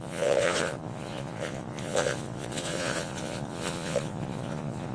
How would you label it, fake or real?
fake